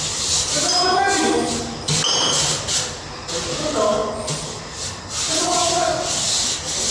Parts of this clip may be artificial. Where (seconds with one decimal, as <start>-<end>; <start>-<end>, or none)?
none